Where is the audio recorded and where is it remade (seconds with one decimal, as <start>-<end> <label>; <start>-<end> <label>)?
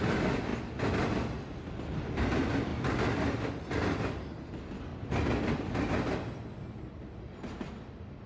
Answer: 0.0-8.3 recorded